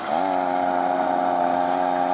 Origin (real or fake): real